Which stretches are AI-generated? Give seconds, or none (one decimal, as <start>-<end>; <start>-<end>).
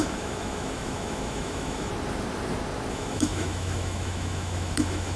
0.0-1.9; 2.9-5.2